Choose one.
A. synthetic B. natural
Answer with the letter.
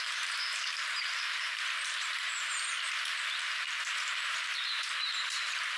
A